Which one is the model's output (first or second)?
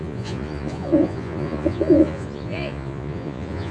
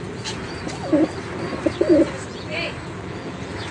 first